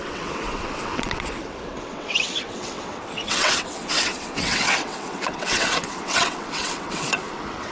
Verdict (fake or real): fake